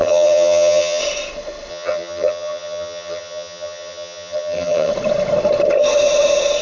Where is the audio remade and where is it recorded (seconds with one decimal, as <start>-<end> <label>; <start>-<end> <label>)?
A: 0.0-1.0 remade; 1.0-1.7 recorded; 1.7-4.9 remade; 4.9-6.6 recorded